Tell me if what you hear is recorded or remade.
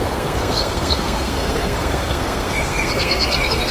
remade